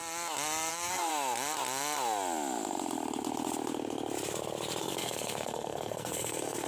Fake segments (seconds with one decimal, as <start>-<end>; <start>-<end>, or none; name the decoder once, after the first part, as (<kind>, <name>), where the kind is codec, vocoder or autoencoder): 0.7-1.1 (codec, SNAC); 4.8-6.7